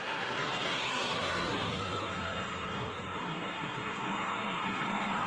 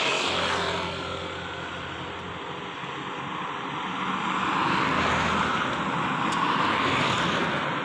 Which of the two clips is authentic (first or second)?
second